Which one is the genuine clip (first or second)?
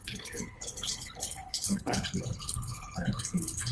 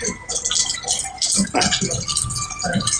second